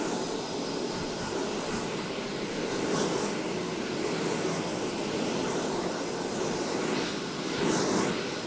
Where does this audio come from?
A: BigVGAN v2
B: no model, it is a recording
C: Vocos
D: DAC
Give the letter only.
B